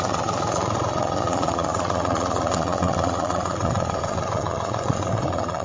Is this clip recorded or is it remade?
remade